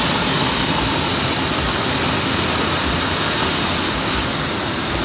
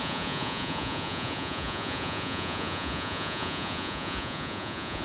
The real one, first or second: first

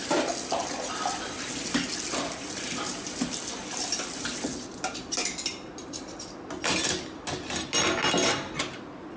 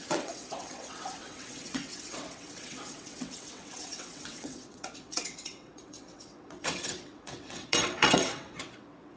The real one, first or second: first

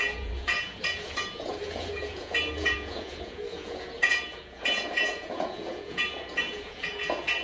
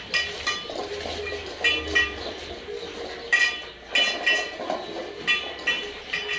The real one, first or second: second